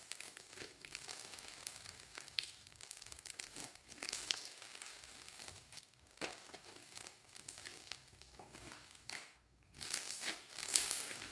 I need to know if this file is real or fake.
fake